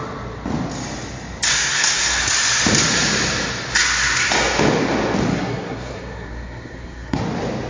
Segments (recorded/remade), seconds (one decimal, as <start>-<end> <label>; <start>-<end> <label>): 0.0-1.5 recorded; 1.5-2.2 remade; 2.2-5.3 recorded; 5.3-7.2 remade; 7.2-7.7 recorded